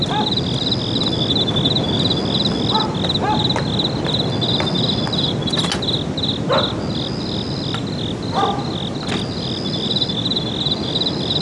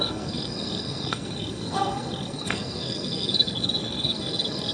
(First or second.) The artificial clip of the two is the second